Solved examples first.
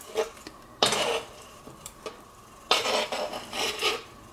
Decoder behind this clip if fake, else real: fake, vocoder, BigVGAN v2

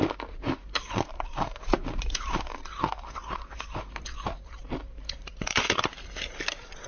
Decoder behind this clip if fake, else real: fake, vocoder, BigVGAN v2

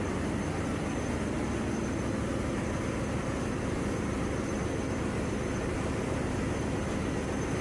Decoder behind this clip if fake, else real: fake, vocoder, BigVGAN v2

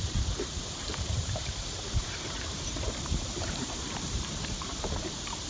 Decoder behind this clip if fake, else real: fake, vocoder, BigVGAN v2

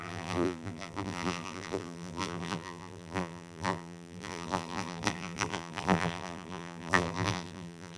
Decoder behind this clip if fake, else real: fake, vocoder, BigVGAN v2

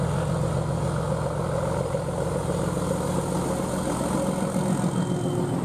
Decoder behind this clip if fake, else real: real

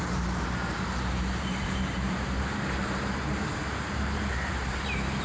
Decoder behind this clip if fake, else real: fake, vocoder, BigVGAN v2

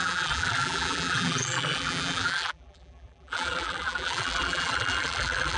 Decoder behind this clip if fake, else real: fake, vocoder, BigVGAN v2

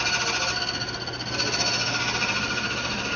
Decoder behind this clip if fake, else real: real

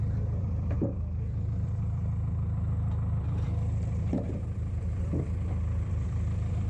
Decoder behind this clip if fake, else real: fake, vocoder, BigVGAN v2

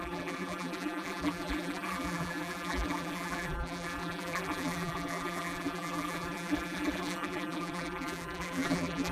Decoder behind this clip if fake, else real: fake, vocoder, BigVGAN v2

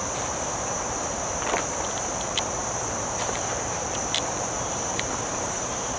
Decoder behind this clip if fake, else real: fake, vocoder, BigVGAN v2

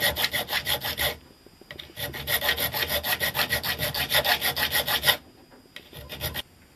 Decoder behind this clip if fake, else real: real